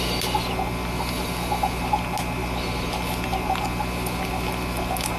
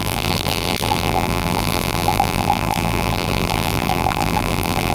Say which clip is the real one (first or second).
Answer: first